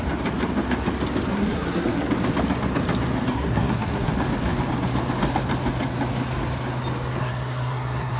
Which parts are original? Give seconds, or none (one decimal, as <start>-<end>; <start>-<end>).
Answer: 0.0-1.3; 2.1-3.3; 4.1-7.2